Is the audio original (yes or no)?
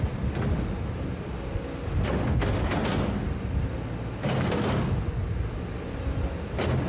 yes